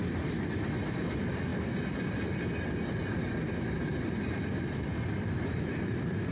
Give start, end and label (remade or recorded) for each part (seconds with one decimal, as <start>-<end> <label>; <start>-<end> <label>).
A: 0.0-1.5 remade; 1.5-2.1 recorded; 2.1-6.3 remade